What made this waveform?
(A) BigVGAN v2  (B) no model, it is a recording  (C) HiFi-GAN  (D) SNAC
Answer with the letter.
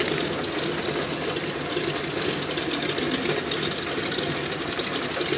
B